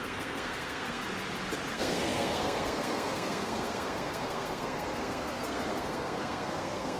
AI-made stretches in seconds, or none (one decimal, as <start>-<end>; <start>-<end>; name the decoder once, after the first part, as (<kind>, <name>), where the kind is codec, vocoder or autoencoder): 0.0-1.0 (codec, SNAC); 1.7-7.0